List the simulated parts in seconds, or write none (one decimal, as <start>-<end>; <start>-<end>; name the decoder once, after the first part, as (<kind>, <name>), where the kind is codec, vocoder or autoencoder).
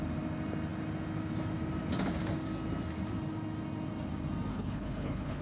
4.5-5.4 (codec, HILCodec)